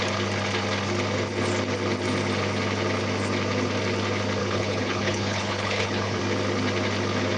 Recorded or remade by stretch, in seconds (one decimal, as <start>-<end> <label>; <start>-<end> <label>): 0.0-4.4 recorded; 4.4-6.2 remade; 6.2-7.4 recorded